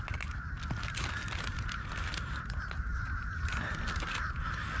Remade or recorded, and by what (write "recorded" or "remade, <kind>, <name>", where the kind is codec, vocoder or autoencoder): recorded